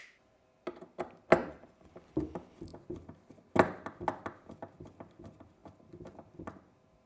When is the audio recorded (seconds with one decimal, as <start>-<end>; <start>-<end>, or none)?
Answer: 0.0-1.4; 1.9-7.1